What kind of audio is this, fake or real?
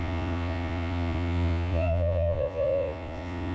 fake